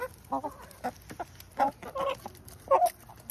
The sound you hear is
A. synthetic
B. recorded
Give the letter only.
B